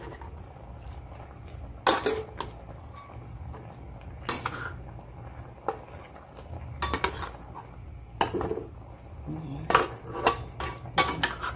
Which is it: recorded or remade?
recorded